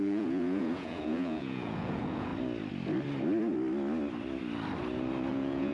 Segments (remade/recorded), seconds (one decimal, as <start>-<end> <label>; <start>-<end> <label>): 0.0-2.3 remade; 2.3-5.3 recorded; 5.3-5.7 remade